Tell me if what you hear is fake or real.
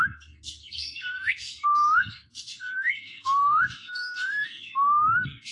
fake